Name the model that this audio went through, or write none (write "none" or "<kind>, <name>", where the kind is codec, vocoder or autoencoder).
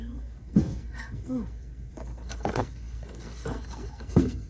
codec, SNAC